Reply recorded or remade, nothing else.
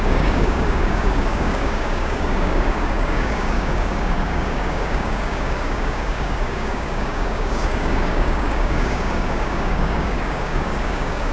remade